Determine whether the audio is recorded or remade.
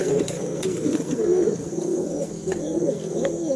remade